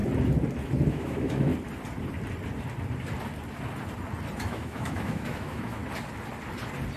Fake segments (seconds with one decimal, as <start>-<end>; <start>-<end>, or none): 0.9-1.5; 4.4-5.8